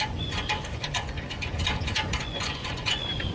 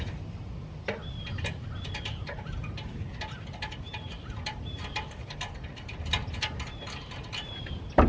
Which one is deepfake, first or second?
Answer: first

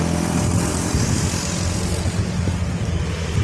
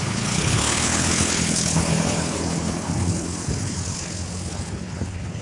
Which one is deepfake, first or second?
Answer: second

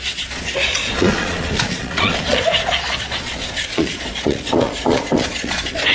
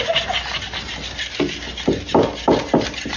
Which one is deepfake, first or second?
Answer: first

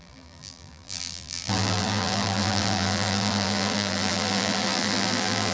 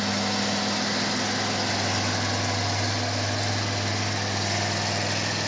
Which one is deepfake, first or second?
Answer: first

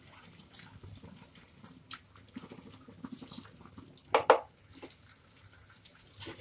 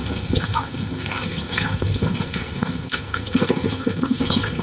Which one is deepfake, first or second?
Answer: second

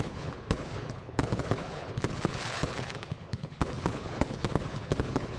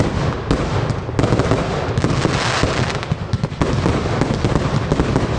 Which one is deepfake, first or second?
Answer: first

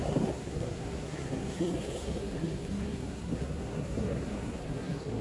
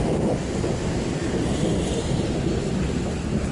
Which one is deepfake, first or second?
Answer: first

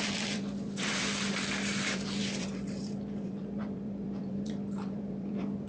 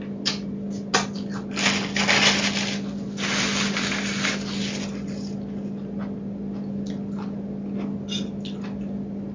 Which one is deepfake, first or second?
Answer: first